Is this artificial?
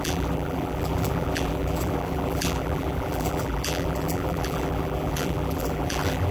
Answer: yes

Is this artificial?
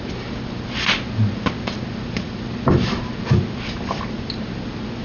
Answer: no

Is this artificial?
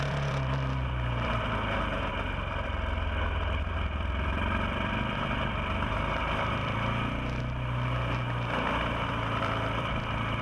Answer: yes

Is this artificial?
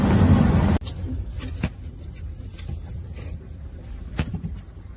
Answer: no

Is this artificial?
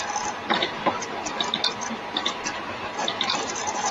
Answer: yes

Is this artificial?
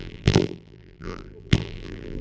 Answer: yes